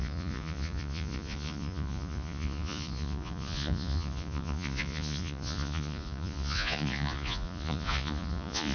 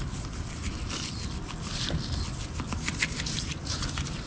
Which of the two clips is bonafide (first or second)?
second